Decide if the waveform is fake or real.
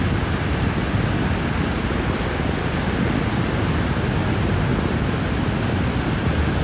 real